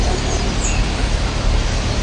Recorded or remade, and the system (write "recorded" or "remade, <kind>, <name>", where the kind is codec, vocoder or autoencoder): recorded